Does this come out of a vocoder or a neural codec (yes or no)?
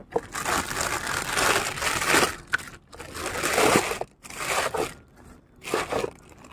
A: no